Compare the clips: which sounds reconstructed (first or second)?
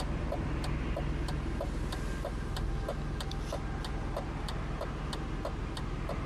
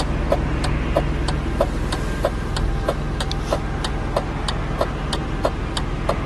first